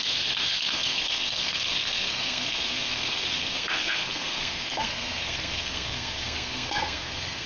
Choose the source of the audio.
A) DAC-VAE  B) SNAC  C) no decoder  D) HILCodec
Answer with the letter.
B